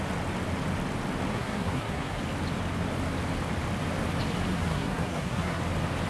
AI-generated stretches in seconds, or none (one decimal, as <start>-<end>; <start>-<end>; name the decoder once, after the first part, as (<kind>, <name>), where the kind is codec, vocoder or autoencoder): 1.3-2.2 (codec, SNAC); 4.5-5.6